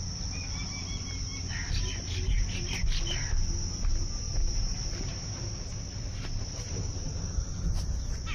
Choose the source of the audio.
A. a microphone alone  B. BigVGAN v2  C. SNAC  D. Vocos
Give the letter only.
A